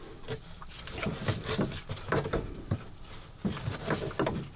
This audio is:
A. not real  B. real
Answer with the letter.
B